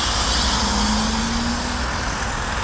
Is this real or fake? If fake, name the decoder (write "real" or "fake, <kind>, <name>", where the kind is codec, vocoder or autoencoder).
real